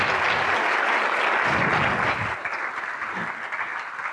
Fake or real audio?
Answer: real